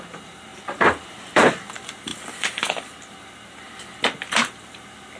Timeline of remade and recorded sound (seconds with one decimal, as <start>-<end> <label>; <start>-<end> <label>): 0.0-0.5 recorded; 0.5-1.5 remade; 1.5-2.1 recorded; 2.1-3.8 remade; 3.8-5.2 recorded